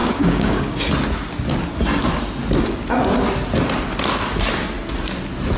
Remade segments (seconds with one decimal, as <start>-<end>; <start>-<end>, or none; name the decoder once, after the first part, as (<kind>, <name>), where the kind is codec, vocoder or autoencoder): 0.0-0.8 (codec, DAC)